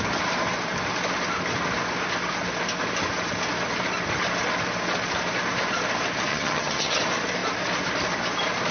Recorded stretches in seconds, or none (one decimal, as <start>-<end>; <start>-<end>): 0.0-6.3; 7.0-8.7